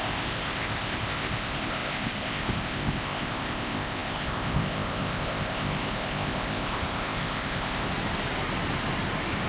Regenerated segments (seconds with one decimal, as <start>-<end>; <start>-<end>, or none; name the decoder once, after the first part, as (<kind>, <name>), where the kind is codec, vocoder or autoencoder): 0.0-7.9 (codec, ZipCodec)